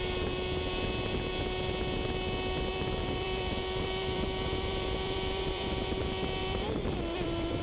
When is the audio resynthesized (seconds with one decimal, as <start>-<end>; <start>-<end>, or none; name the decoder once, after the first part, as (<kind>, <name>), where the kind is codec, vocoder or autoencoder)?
2.7-6.0 (vocoder, BigVGAN v2); 6.4-7.6